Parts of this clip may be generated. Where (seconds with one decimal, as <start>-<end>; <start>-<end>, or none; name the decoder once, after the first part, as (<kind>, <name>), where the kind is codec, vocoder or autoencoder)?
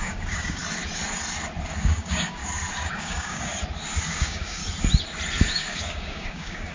0.0-0.6 (codec, DAC); 1.8-2.4; 2.9-3.5; 4.0-4.6; 5.4-6.7